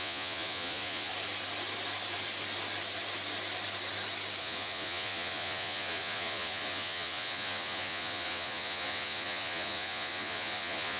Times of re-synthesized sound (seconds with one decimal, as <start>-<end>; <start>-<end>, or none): 0.0-1.1; 4.4-11.0